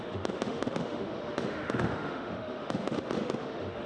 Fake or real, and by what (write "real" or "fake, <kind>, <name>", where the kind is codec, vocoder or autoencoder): fake, autoencoder, DAC-VAE